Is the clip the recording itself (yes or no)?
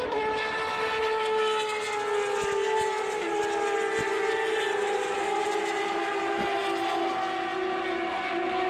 yes